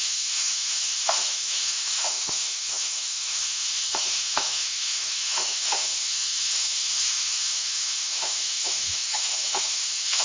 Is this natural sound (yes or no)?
no